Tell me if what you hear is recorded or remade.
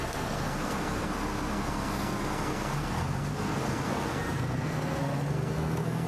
remade